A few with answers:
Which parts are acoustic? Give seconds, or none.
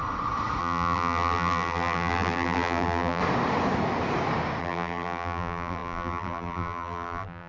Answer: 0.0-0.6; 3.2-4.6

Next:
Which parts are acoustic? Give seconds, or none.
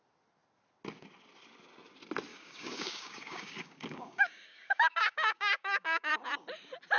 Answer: 0.0-2.3; 6.1-7.0